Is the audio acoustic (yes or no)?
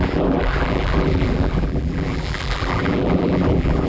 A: no